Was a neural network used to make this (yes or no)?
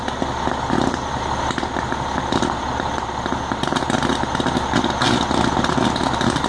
no